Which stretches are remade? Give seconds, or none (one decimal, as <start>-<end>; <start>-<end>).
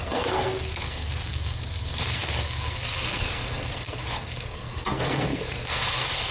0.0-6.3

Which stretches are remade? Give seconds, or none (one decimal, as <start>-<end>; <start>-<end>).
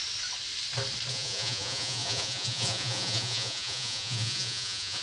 1.1-5.0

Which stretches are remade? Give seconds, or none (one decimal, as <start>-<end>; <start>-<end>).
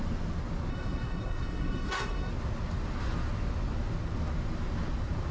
0.7-2.3